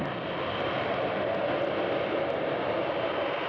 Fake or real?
real